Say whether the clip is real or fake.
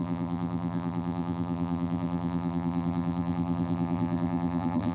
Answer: fake